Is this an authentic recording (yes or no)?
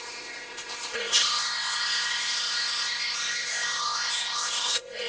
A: no